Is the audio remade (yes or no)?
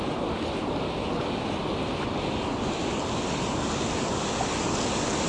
no